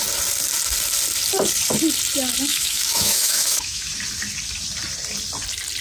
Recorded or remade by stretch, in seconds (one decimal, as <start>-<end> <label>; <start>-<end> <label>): 0.0-2.5 recorded; 2.5-3.9 remade; 3.9-5.8 recorded